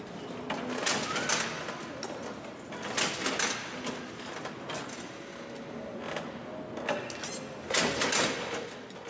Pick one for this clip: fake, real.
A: real